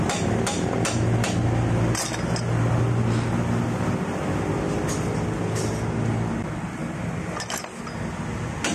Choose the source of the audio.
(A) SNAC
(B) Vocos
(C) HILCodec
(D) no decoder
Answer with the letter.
D